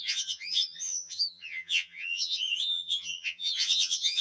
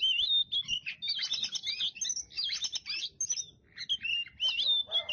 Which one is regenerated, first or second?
first